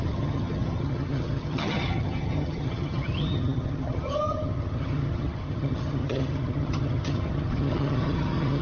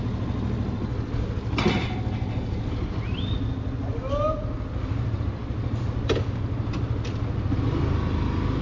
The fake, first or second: first